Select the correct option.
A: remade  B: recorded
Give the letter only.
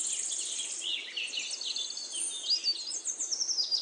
B